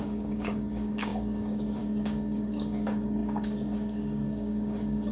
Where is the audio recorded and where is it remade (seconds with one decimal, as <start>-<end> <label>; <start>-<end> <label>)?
0.0-5.1 remade